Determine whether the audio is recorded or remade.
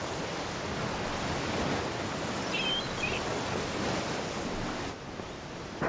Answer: recorded